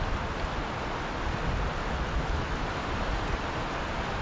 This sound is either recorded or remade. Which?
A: recorded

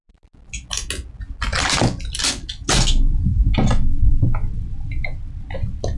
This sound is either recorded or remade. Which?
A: recorded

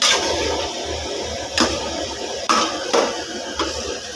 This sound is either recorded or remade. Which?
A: remade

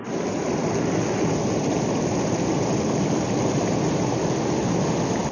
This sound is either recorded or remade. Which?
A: recorded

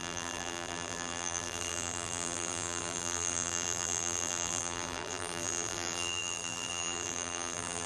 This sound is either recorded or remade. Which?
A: remade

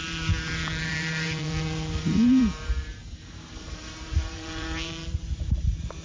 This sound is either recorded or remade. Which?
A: remade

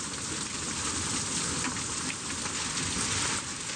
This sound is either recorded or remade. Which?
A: recorded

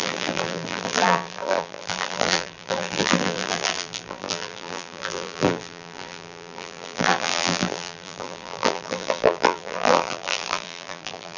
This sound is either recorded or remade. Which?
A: remade